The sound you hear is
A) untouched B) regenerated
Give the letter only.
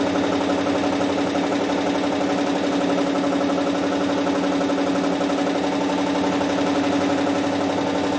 A